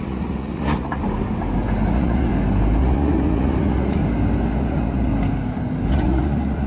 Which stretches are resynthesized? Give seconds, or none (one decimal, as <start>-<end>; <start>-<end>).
0.0-1.0; 1.9-2.3; 2.8-4.0; 4.6-5.1; 5.9-6.7